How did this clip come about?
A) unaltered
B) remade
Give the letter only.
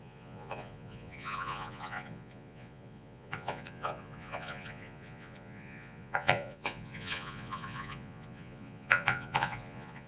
B